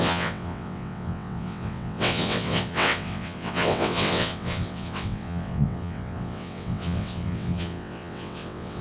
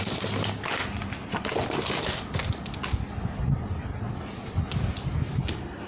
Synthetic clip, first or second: first